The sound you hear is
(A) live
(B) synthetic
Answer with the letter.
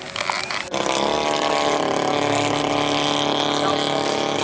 A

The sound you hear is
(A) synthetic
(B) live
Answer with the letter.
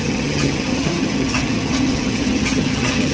A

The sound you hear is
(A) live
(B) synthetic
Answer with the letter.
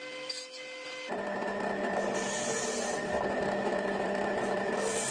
A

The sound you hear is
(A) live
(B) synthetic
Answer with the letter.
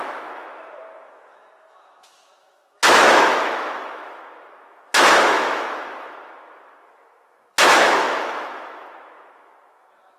B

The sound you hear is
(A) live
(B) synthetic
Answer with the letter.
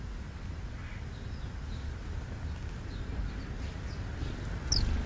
A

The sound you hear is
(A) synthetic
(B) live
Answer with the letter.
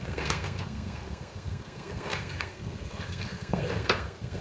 A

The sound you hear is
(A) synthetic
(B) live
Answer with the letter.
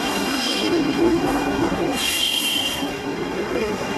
A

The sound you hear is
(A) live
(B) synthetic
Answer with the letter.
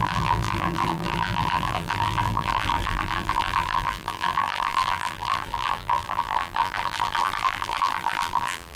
B